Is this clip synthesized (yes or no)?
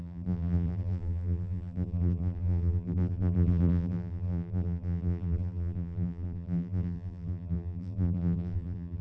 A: yes